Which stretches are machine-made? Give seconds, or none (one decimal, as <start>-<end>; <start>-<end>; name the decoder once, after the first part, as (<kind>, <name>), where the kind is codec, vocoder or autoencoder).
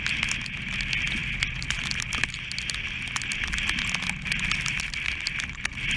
none